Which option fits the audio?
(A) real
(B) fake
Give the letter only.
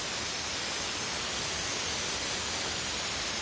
A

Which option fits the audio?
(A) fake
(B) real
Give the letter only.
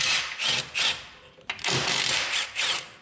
B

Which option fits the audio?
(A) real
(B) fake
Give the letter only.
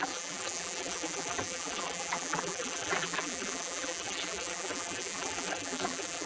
B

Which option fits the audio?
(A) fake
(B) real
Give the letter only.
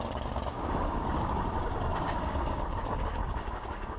A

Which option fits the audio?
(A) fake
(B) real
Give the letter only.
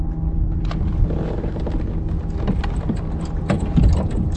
B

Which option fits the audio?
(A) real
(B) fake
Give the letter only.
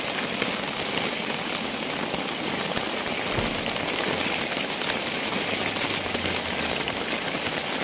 A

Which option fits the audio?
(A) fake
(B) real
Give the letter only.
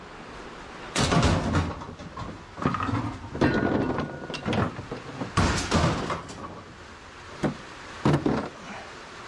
B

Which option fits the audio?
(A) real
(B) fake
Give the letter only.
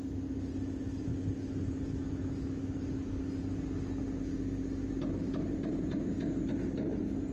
A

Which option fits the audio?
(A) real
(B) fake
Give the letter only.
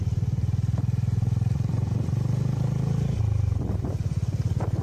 B